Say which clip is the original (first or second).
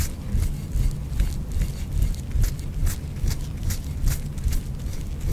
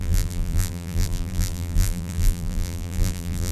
first